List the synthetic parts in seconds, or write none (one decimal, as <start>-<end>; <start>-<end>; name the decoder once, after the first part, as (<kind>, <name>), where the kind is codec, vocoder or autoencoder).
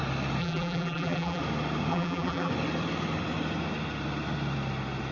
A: 0.4-1.4 (vocoder, BigVGAN v2); 1.9-2.5